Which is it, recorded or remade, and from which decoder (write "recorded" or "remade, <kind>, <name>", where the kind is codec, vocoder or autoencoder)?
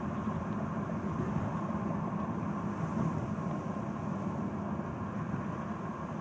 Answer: recorded